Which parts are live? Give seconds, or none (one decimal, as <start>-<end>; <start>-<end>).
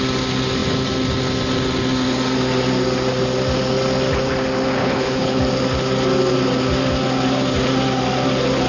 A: 0.0-4.8; 5.4-8.7